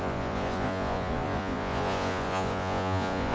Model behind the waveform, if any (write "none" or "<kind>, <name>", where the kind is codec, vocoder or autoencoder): vocoder, Vocos